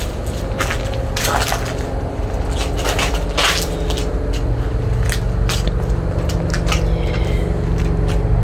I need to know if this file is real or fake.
real